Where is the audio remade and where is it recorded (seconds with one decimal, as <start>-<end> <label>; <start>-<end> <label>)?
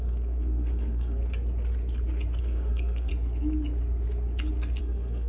0.0-1.2 remade; 1.2-2.4 recorded; 2.4-3.1 remade; 3.1-4.8 recorded; 4.8-5.3 remade